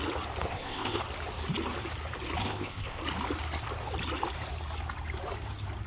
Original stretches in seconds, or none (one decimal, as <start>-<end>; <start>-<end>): 0.0-0.5; 1.0-2.4; 3.0-5.9